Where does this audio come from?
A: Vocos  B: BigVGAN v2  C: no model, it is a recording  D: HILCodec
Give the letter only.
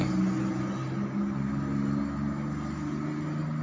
C